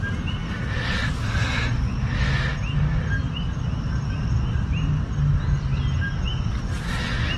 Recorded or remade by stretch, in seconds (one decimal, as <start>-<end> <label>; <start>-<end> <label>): 0.0-7.4 recorded